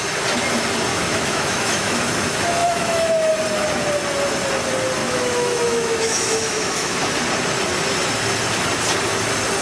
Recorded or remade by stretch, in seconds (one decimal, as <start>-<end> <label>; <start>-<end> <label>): 0.0-0.9 recorded; 0.9-2.0 remade; 2.0-2.6 recorded; 2.6-3.3 remade; 3.3-5.0 recorded; 5.0-7.0 remade; 7.0-9.6 recorded